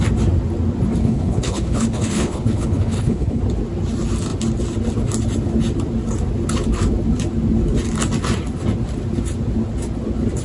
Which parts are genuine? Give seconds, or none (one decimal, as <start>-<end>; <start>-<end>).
0.0-1.0; 3.4-10.4